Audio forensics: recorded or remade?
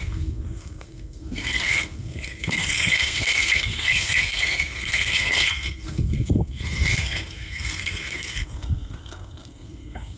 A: remade